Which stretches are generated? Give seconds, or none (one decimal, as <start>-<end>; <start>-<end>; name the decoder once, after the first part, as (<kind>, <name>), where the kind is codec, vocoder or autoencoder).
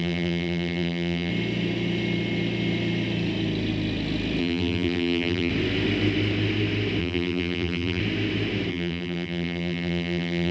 0.0-1.3 (vocoder, BigVGAN v2); 4.4-5.5; 7.0-8.0; 8.7-10.5